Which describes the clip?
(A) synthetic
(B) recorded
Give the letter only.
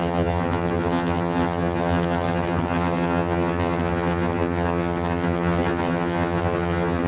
A